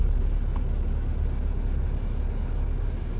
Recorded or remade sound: recorded